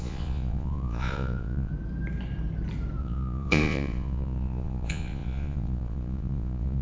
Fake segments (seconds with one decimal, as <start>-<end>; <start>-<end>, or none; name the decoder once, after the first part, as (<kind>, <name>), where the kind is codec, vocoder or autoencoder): 0.0-1.7 (vocoder, Vocos); 3.0-6.8